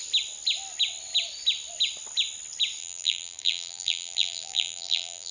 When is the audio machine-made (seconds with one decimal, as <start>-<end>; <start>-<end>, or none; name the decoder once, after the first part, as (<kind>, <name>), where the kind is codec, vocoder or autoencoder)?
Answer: 2.8-5.3 (vocoder, BigVGAN v2)